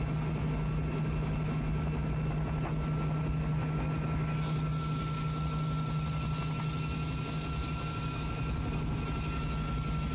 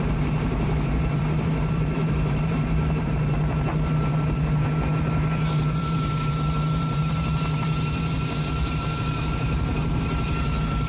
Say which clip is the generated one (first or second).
second